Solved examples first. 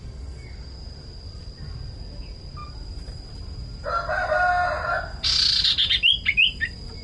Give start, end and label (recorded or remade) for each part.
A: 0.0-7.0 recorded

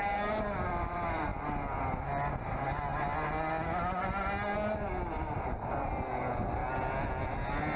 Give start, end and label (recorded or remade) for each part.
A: 0.0-7.8 recorded